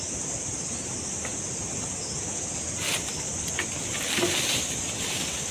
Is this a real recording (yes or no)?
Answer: yes